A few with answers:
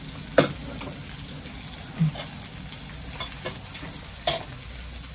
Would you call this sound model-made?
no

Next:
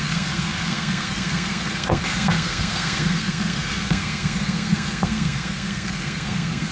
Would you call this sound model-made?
yes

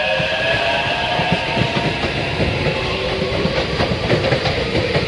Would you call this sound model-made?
yes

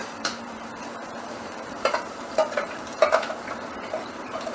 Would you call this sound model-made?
yes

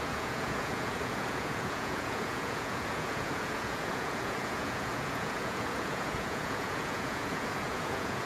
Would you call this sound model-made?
yes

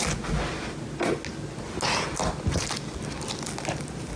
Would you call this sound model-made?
no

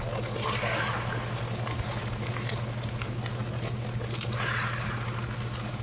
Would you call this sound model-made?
no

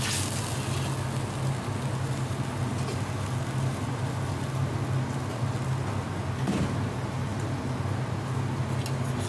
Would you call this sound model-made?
no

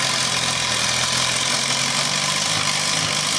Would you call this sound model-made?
no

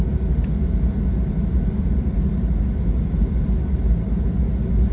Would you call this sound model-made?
no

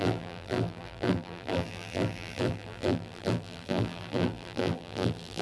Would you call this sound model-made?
yes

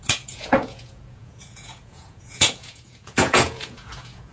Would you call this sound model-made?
yes